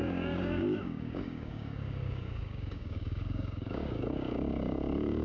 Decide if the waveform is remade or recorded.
remade